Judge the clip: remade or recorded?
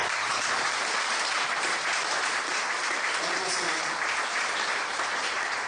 remade